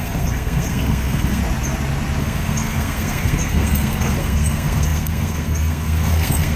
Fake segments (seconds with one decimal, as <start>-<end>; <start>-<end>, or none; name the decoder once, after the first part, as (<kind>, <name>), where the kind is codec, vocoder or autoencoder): 0.0-1.4 (codec, SNAC); 2.2-6.6